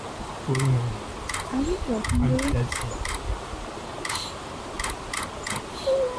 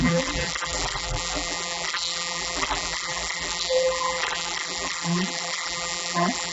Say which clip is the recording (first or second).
first